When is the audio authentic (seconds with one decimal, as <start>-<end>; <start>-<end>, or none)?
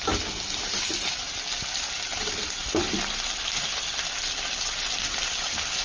0.0-5.8